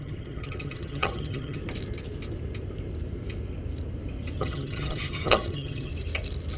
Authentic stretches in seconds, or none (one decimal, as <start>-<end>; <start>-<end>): 1.6-4.4; 5.9-6.6